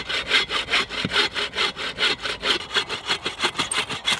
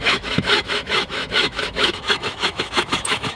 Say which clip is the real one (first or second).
first